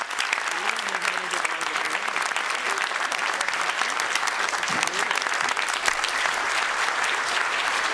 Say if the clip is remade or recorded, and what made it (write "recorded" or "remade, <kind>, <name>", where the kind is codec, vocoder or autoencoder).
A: remade, vocoder, BigVGAN v2